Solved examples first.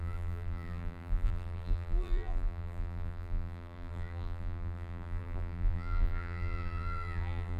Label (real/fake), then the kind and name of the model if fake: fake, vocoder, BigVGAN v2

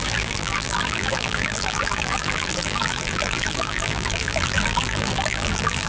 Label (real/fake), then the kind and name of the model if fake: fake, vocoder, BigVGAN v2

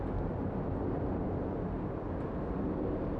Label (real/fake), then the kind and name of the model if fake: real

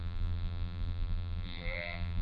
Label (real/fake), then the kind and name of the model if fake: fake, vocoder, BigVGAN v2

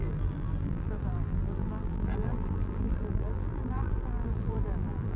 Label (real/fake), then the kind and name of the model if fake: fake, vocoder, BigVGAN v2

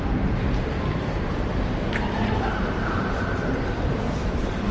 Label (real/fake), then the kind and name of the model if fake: fake, vocoder, BigVGAN v2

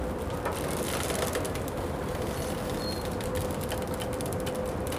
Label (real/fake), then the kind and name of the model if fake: real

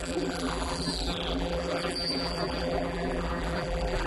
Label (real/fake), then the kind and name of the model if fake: fake, vocoder, BigVGAN v2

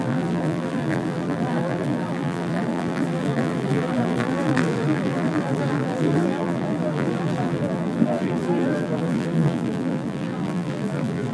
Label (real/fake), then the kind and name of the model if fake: fake, vocoder, BigVGAN v2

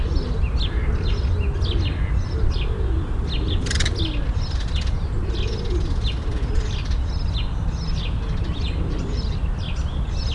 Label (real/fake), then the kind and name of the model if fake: real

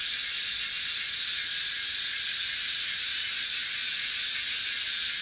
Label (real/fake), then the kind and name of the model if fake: real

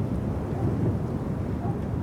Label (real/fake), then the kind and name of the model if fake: real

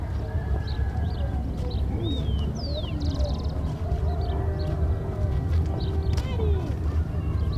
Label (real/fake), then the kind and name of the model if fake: real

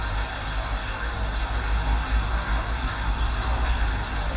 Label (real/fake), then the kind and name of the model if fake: real